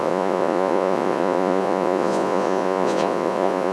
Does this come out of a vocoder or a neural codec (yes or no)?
yes